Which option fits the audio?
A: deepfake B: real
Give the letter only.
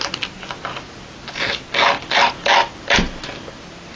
B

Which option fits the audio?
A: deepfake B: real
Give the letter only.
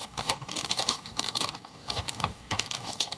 A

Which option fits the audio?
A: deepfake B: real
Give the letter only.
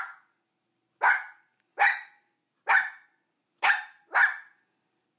B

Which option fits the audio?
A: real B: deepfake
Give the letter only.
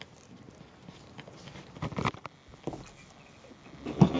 A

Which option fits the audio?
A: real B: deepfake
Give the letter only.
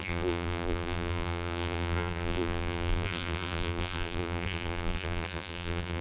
B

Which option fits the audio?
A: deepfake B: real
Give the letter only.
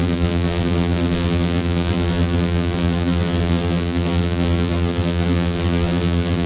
A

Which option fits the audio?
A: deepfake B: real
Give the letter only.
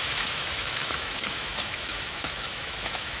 A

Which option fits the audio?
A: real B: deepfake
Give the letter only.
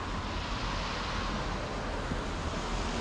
A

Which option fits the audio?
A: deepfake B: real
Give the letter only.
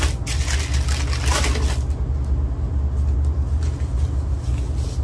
B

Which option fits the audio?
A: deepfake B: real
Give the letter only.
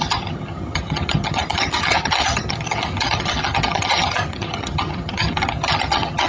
A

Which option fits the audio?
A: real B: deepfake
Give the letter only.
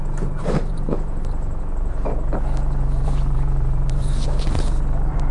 B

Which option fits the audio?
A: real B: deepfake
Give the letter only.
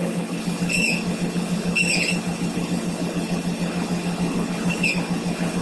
B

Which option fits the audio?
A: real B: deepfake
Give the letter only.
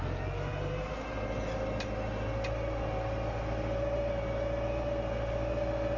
A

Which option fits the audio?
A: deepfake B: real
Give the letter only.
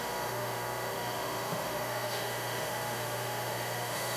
A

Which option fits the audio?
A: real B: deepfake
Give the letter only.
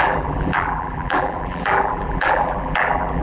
B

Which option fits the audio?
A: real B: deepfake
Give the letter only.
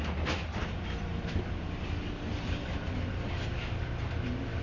B